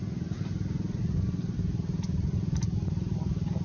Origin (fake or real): real